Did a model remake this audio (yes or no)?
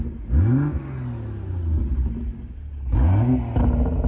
no